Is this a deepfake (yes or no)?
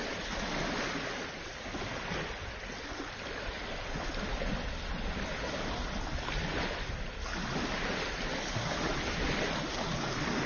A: no